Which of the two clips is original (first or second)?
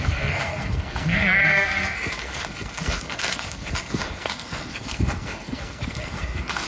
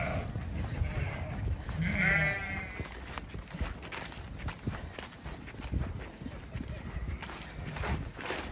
second